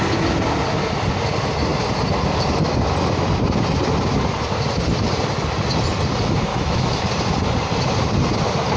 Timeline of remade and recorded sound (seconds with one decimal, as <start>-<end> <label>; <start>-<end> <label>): 0.0-6.5 recorded; 6.5-7.0 remade; 7.0-8.8 recorded